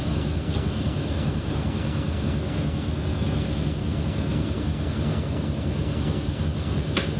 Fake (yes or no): yes